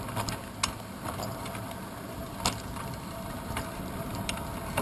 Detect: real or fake real